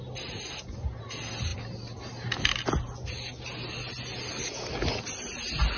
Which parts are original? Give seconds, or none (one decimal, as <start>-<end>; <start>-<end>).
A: 0.0-5.8